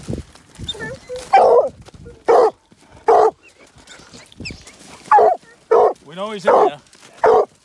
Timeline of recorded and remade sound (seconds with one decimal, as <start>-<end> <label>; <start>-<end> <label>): 0.0-7.6 recorded